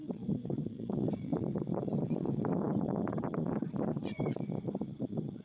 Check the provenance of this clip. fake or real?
fake